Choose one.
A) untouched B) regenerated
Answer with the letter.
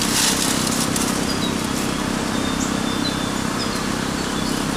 A